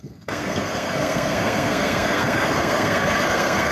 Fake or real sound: fake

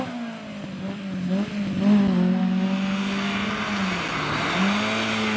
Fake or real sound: real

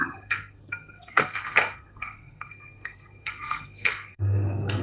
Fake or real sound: fake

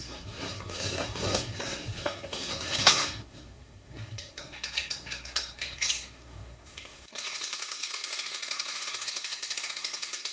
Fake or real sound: fake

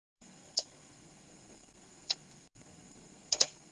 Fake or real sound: fake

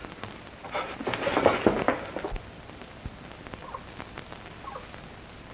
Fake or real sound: real